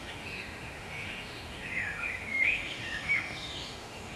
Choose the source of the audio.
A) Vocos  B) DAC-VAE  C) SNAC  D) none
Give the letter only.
B